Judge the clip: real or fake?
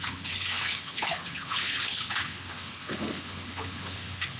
fake